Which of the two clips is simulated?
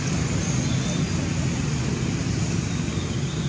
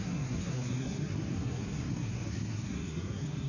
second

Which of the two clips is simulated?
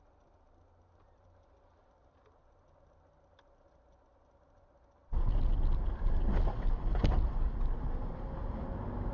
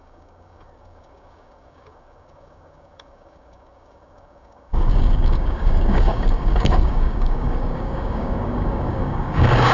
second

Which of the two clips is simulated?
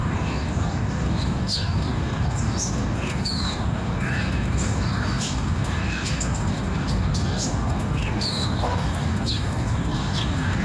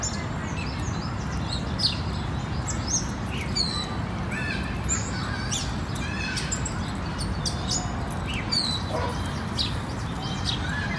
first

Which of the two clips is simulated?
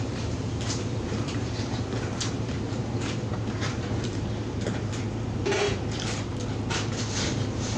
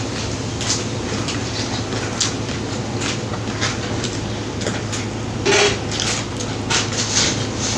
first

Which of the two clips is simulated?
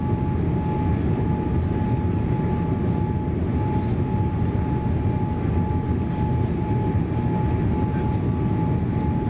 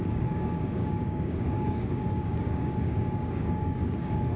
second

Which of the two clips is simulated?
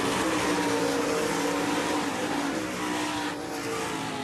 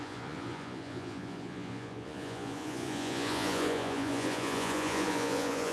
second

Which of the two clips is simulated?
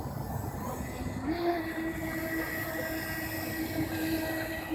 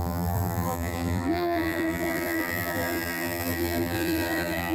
second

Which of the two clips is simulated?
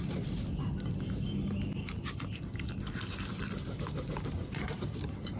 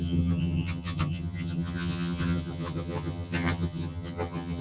second